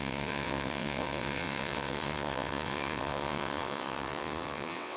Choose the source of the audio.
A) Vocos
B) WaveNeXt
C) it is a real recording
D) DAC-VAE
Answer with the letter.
B